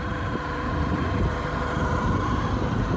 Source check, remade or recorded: recorded